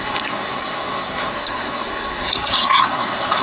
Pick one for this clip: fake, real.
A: fake